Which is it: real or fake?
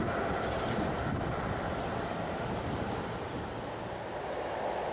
real